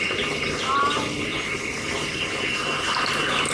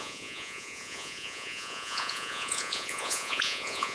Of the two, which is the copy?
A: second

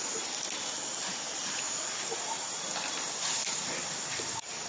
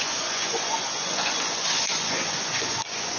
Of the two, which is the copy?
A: second